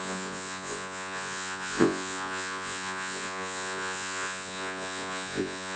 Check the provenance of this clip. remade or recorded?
remade